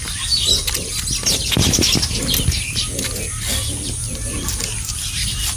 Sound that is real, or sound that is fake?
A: real